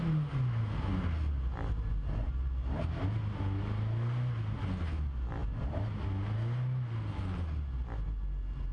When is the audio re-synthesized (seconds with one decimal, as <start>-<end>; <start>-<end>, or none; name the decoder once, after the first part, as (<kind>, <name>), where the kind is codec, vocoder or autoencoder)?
none